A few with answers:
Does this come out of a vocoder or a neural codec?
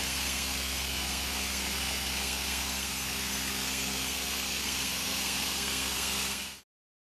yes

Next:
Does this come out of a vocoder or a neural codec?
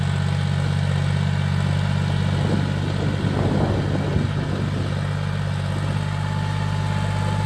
no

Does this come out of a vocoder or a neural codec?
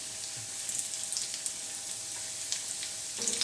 no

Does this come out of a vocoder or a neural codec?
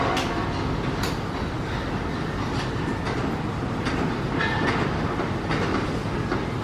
no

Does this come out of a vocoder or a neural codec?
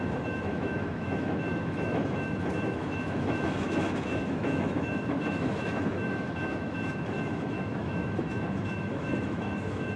yes